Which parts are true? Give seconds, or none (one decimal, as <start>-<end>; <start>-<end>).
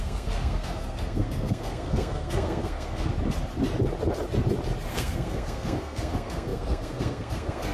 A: 3.1-4.9